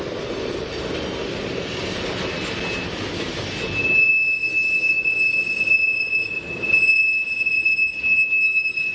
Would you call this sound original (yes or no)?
yes